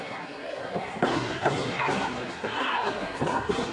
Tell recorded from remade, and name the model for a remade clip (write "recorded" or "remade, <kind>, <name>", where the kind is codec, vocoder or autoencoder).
remade, codec, SNAC